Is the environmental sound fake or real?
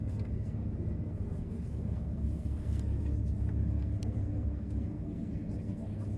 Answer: fake